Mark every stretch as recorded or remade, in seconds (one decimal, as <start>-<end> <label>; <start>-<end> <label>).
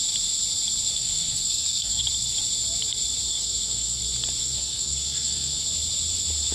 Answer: 0.0-0.9 recorded; 0.9-2.0 remade; 2.0-3.3 recorded; 3.3-4.0 remade; 4.0-4.4 recorded; 4.4-5.6 remade; 5.6-6.5 recorded